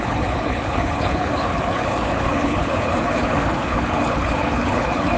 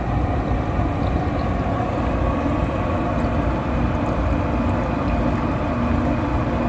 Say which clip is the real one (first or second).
second